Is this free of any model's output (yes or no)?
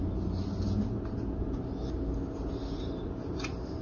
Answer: yes